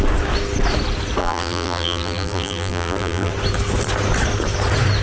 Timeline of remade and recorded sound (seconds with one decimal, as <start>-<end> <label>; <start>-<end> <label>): 0.0-1.2 recorded; 1.2-3.3 remade; 3.3-5.0 recorded